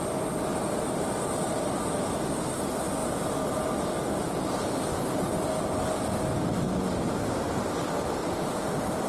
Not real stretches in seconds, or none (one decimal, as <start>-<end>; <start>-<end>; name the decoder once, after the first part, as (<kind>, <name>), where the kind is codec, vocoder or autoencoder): 0.5-2.4 (vocoder, BigVGAN v2); 8.2-9.1